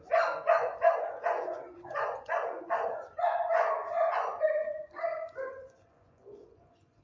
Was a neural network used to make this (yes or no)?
yes